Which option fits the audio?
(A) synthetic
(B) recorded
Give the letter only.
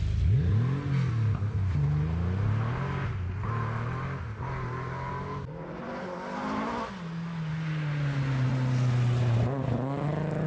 B